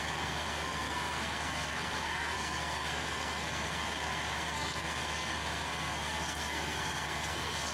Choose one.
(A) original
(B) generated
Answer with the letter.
B